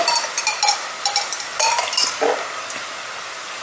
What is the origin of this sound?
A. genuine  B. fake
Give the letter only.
A